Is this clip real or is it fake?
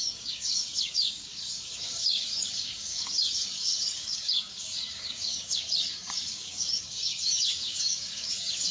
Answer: fake